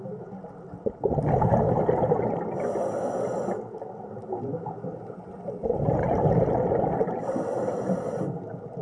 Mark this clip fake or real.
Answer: real